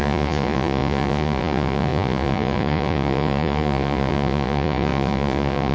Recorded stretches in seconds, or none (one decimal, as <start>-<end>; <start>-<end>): none